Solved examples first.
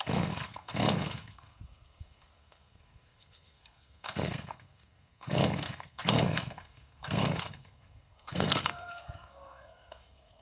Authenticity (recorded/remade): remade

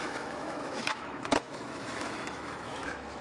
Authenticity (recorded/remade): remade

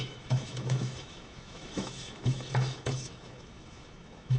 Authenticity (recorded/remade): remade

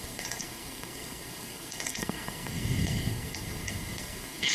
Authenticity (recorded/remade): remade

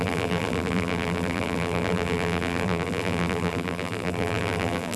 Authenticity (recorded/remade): remade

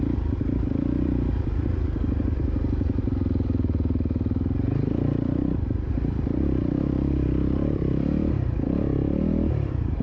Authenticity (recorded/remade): remade